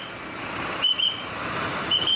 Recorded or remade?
recorded